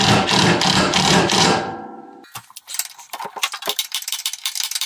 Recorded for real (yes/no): no